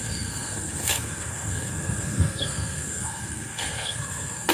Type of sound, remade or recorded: remade